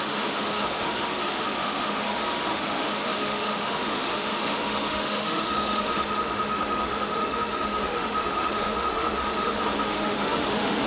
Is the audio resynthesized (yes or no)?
yes